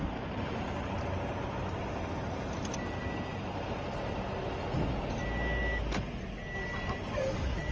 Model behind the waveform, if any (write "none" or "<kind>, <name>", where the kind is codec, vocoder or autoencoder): none